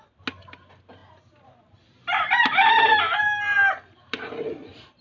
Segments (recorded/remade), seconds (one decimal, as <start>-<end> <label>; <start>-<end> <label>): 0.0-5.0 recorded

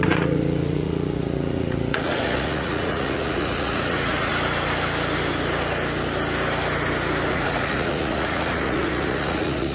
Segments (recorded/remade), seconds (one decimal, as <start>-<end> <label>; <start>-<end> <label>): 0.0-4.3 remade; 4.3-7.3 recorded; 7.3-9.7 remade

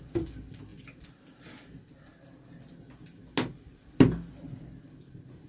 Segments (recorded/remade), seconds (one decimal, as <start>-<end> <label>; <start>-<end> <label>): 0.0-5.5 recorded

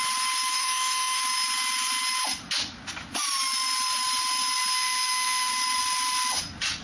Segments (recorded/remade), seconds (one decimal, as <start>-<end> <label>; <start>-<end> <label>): 0.0-0.5 recorded; 0.5-1.2 remade; 1.2-4.7 recorded; 4.7-5.5 remade; 5.5-6.8 recorded